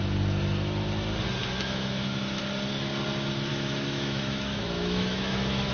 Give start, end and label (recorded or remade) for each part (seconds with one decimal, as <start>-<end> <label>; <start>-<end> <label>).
0.0-1.4 recorded; 1.4-2.4 remade; 2.4-3.5 recorded; 3.5-5.7 remade